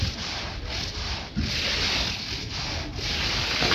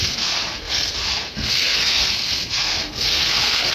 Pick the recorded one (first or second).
first